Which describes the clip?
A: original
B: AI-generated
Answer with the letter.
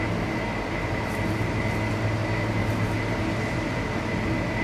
A